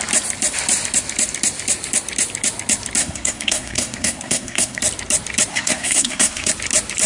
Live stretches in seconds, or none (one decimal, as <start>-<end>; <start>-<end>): 0.0-3.0; 4.8-5.5; 6.5-7.1